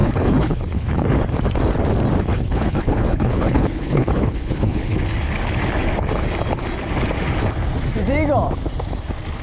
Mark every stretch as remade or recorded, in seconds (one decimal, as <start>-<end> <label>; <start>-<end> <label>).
0.0-1.2 remade; 1.2-2.3 recorded; 2.3-5.0 remade; 5.0-9.4 recorded